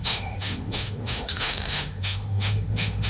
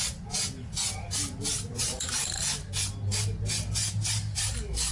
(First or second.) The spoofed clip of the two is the first